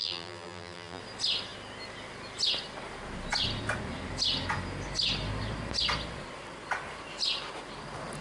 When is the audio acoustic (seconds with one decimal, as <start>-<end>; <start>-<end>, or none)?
1.0-8.2